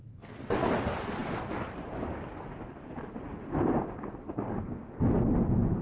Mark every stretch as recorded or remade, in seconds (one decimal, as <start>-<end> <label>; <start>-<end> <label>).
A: 0.0-5.8 recorded